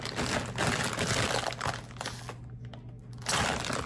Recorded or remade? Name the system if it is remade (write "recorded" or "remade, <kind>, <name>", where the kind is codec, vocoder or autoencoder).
recorded